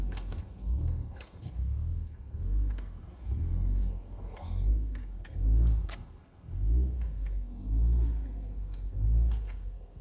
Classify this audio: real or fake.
fake